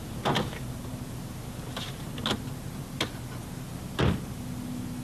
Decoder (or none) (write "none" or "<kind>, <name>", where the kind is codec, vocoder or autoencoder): none